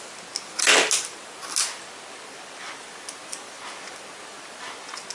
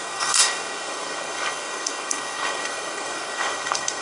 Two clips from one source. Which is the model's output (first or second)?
second